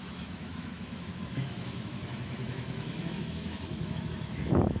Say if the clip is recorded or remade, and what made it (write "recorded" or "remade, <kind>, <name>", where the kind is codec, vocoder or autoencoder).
remade, autoencoder, DAC-VAE